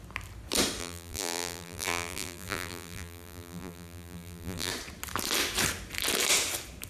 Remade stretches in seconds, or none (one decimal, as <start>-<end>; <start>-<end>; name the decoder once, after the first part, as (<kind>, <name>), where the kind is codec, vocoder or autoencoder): 0.8-4.7 (vocoder, BigVGAN v2)